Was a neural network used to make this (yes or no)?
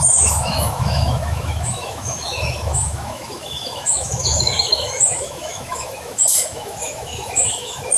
yes